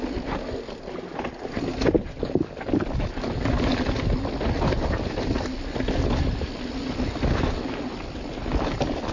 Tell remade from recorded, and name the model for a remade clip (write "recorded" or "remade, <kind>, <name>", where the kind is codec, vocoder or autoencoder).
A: recorded